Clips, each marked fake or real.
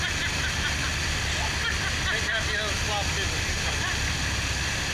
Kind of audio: real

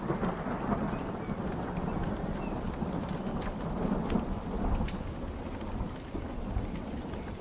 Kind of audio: real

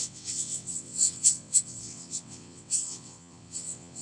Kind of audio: fake